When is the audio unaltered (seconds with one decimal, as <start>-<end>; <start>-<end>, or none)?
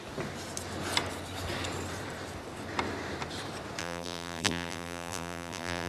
0.0-3.8